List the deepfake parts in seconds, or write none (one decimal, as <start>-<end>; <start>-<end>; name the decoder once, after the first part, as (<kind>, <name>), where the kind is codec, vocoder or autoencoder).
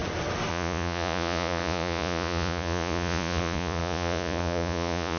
0.5-5.2 (vocoder, Vocos)